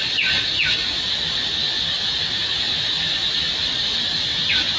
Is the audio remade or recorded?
recorded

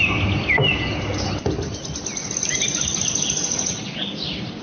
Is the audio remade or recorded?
recorded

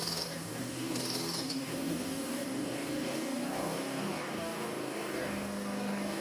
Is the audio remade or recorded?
remade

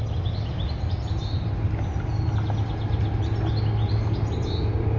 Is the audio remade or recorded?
recorded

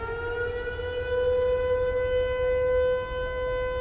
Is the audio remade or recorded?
recorded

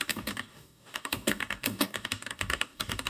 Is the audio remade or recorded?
remade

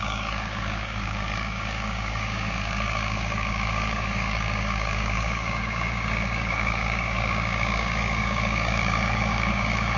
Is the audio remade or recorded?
remade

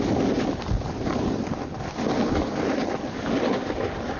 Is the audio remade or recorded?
recorded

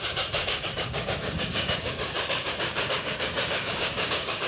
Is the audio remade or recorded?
remade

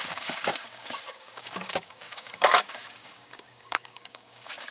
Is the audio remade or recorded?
remade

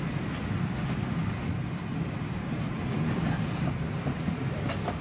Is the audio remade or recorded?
recorded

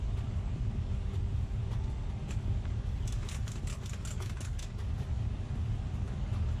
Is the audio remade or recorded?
remade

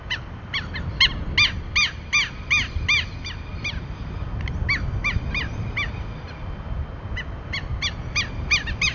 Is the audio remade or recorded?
recorded